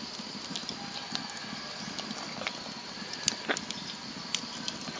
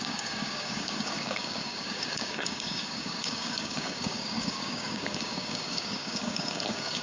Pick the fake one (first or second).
second